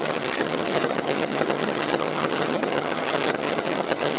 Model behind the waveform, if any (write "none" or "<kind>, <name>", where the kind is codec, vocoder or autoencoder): vocoder, HiFi-GAN